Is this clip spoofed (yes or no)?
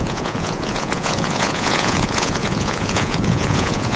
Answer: yes